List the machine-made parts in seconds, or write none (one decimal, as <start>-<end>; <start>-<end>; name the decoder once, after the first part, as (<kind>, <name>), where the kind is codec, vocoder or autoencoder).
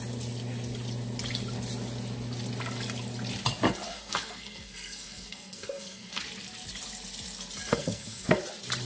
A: 3.9-6.2 (codec, SNAC); 7.7-8.4